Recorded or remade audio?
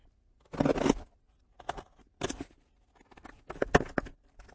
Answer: recorded